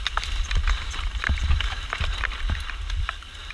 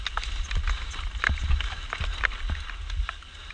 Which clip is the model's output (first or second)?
first